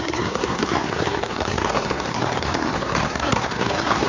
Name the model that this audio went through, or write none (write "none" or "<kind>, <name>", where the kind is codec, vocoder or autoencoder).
codec, SNAC